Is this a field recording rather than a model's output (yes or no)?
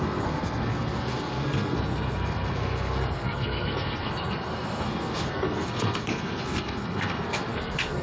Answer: no